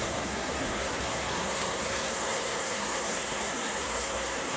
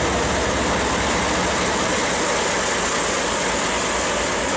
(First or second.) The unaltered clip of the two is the second